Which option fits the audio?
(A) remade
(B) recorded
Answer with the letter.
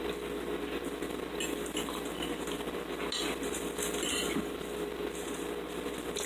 B